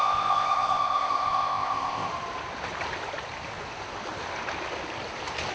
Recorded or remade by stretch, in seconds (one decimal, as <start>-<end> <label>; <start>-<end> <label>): 0.0-2.1 remade; 2.1-5.5 recorded